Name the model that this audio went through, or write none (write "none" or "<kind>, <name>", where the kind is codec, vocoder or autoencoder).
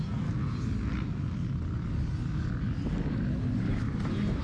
none